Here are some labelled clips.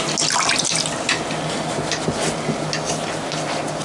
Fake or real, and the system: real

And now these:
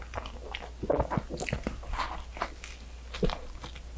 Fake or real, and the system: real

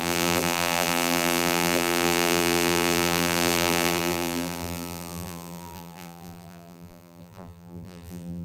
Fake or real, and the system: fake, vocoder, BigVGAN v2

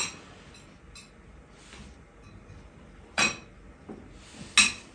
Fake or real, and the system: real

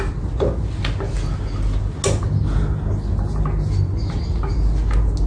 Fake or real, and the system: real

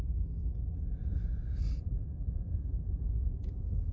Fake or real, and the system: real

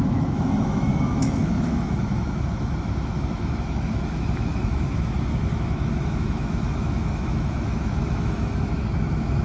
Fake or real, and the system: fake, autoencoder, DAC-VAE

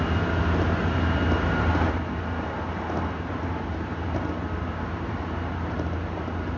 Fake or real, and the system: real